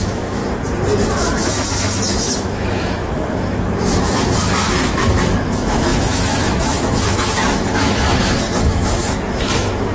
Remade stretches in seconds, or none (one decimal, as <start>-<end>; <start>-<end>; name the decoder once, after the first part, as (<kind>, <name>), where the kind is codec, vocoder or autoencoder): 0.0-0.4 (autoencoder, DAC-VAE); 1.1-9.9